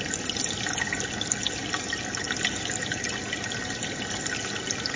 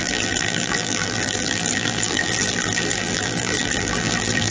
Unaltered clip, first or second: first